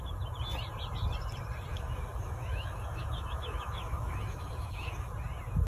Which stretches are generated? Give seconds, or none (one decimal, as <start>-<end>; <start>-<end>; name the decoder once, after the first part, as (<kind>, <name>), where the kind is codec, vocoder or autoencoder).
1.7-5.1 (autoencoder, DAC-VAE)